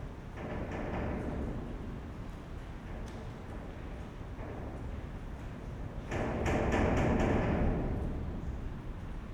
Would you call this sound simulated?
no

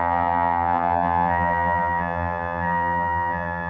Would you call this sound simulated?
yes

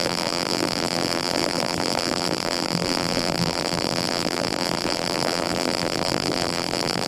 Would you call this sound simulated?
yes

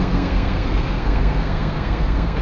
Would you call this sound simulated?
yes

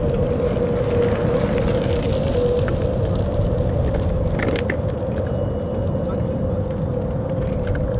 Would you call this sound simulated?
no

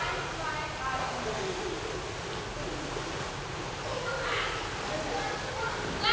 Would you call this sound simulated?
no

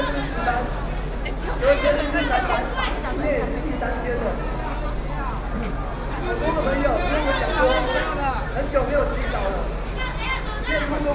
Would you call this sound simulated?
no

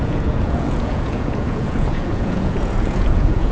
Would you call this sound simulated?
yes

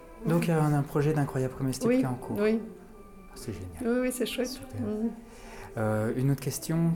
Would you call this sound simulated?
no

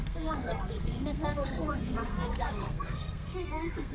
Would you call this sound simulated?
yes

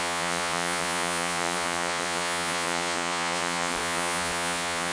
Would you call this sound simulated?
yes